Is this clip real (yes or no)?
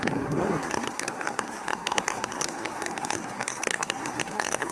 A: no